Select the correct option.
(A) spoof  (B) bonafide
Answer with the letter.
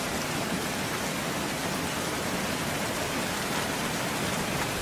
B